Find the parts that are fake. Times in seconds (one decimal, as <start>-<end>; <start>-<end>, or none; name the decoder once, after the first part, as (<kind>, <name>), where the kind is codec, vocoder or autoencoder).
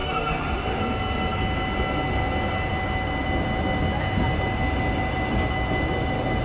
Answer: 0.0-0.8 (autoencoder, DAC-VAE)